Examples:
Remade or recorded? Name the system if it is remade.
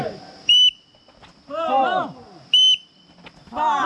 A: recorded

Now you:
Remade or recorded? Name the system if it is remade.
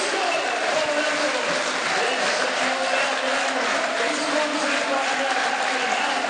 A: recorded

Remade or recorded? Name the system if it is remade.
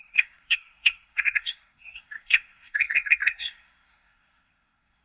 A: remade, codec, SNAC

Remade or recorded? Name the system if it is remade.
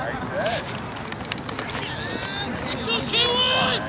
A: recorded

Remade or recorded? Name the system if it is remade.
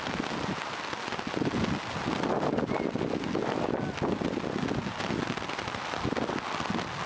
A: recorded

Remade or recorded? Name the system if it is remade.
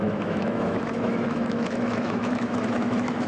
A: remade, autoencoder, DAC-VAE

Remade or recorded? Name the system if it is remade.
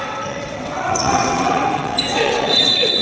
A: remade, vocoder, WaveNeXt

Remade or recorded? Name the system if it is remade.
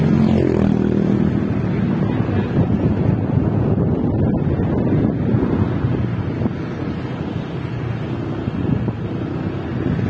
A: recorded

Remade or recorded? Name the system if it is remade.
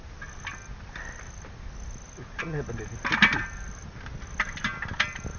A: recorded